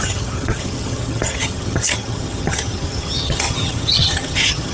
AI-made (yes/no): yes